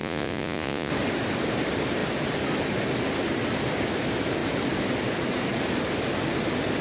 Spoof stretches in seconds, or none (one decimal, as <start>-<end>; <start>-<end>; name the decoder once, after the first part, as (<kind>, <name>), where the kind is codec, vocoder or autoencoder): 0.0-0.9 (vocoder, Vocos)